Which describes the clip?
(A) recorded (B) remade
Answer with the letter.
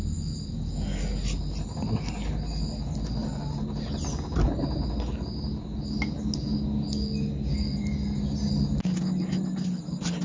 A